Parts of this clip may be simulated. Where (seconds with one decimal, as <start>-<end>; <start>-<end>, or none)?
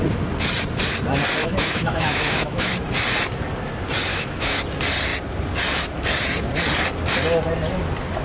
1.4-2.7; 4.1-4.6